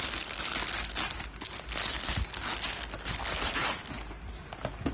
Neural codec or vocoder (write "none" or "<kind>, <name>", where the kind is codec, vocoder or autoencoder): none